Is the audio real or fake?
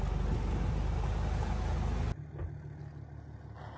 real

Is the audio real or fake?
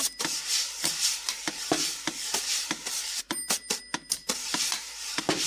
fake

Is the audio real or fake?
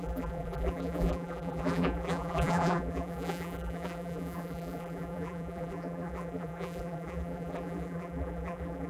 fake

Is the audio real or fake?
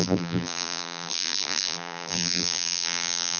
fake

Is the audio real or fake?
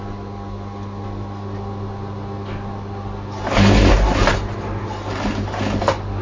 real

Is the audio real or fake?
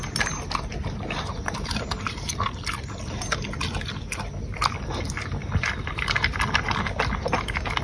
real